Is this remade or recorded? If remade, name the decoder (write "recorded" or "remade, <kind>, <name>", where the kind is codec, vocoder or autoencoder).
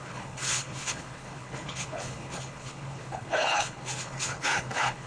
remade, codec, HILCodec